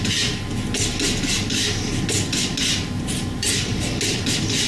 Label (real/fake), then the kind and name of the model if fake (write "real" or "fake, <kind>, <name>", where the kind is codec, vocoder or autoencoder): real